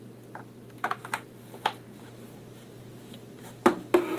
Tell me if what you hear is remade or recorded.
recorded